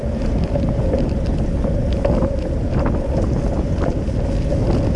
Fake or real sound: real